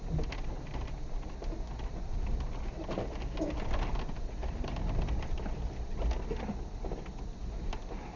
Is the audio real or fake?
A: real